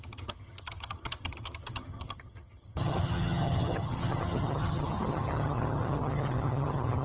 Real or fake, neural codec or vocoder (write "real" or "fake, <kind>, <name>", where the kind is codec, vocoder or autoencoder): fake, vocoder, HiFi-GAN